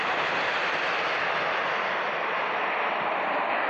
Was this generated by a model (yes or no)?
no